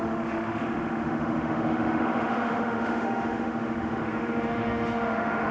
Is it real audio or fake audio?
fake